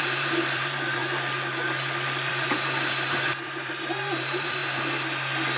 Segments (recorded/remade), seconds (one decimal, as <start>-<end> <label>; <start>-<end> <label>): 0.0-1.0 remade; 1.0-2.3 recorded; 2.3-4.6 remade; 4.6-5.6 recorded